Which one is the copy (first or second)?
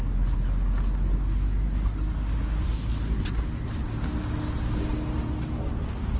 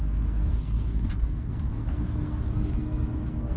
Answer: second